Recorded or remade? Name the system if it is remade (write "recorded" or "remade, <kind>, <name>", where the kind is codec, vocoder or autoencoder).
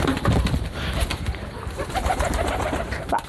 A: remade, vocoder, BigVGAN v2